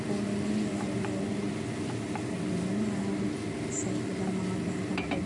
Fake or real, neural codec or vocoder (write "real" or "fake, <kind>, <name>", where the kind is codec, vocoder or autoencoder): real